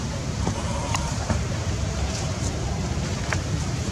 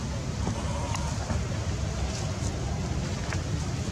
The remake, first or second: first